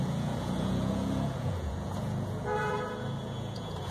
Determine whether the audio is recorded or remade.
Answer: remade